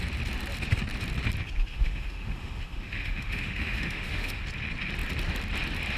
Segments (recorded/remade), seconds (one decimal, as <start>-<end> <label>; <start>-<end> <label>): 0.0-1.7 recorded; 1.7-4.4 remade; 4.4-6.0 recorded

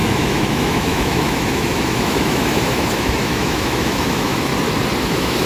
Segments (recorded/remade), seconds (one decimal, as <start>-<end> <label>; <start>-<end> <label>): 0.0-4.5 remade; 4.5-5.0 recorded; 5.0-5.5 remade

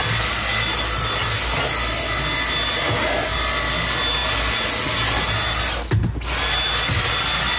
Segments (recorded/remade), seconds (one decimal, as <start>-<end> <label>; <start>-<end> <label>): 0.0-7.6 recorded